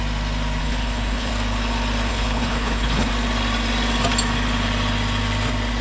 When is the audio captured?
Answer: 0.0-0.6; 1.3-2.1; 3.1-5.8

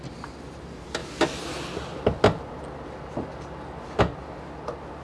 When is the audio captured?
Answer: 0.0-5.0

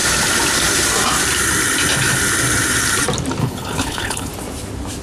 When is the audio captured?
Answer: 0.0-3.4; 4.3-5.0

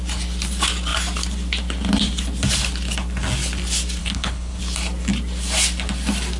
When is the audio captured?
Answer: 0.0-4.0; 4.6-6.4

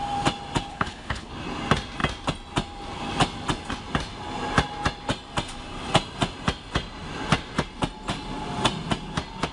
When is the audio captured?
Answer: 0.0-0.7; 1.3-9.5